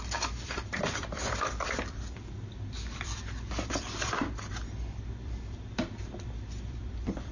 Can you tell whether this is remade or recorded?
remade